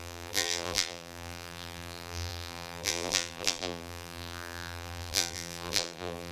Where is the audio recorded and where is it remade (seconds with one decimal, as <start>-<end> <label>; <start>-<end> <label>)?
0.0-6.3 remade